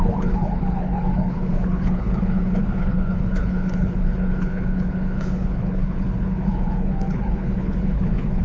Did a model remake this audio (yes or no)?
yes